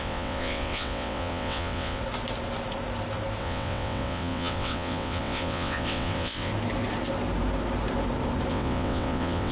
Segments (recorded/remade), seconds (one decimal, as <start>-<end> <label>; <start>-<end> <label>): 0.0-2.0 remade; 2.0-3.4 recorded; 3.4-6.5 remade; 6.5-8.5 recorded; 8.5-9.5 remade